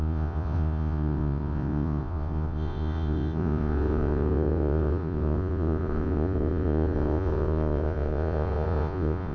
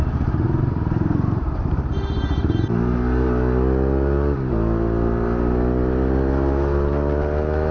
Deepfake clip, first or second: first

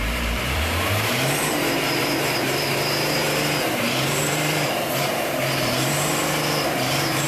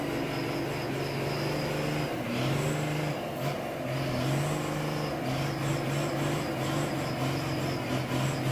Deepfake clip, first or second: first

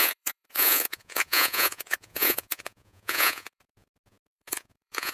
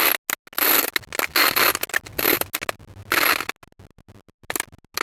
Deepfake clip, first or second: first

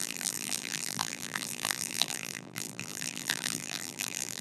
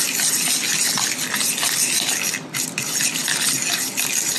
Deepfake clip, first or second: first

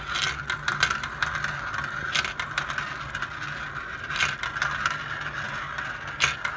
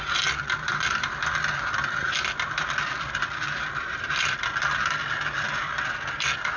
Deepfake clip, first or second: second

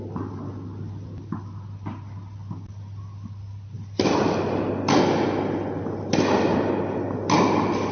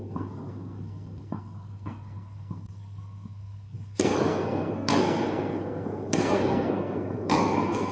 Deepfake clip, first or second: second